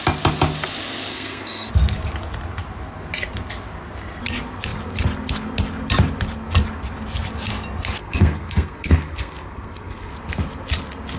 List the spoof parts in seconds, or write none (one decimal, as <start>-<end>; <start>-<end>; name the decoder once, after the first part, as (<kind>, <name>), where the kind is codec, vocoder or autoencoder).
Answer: 1.1-1.7 (codec, SNAC); 8.0-10.1